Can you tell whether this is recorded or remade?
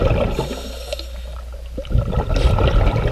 recorded